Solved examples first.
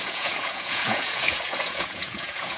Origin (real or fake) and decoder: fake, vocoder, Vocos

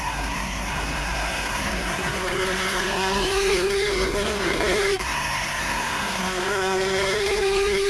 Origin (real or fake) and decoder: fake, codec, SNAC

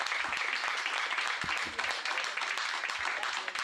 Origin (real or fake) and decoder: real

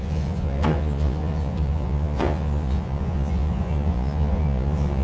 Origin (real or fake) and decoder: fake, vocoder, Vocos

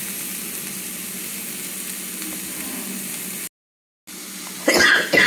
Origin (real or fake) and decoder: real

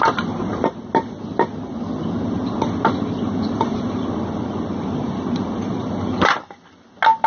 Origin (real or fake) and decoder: real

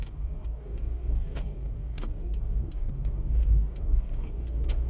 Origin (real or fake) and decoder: fake, codec, DAC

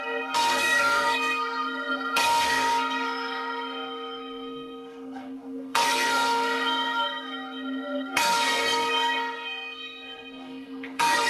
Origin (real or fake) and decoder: fake, codec, SNAC